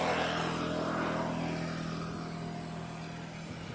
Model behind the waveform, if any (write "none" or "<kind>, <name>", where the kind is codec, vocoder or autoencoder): none